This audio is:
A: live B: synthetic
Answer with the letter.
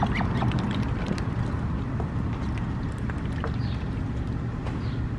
A